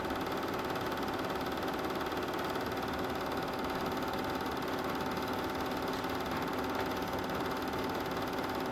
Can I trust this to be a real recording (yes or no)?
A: yes